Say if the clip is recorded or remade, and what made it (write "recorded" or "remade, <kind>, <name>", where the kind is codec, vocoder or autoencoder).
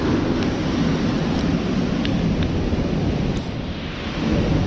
recorded